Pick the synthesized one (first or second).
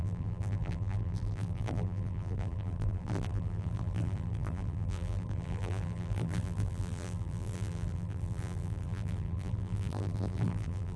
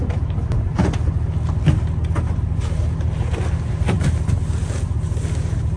first